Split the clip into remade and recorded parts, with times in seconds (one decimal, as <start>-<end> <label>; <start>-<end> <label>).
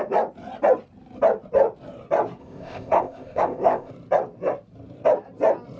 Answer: 0.0-2.4 recorded; 2.4-3.9 remade; 3.9-5.8 recorded